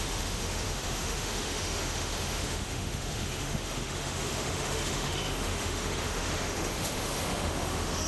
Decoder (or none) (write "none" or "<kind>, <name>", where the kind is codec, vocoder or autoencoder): autoencoder, DAC-VAE